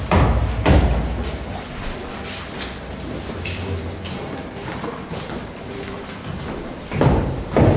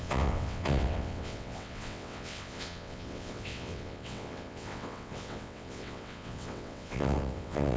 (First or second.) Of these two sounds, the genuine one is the first